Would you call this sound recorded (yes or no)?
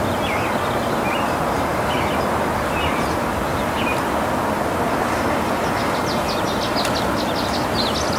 yes